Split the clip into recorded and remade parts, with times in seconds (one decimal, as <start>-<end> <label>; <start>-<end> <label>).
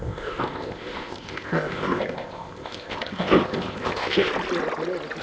0.0-4.3 remade; 4.3-5.2 recorded